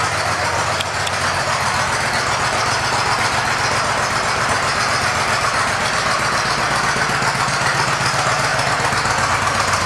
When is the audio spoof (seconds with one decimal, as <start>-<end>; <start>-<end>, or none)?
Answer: none